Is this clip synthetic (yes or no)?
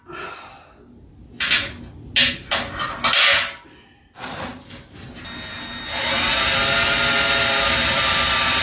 no